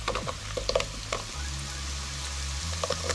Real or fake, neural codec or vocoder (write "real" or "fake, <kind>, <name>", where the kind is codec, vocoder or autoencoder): real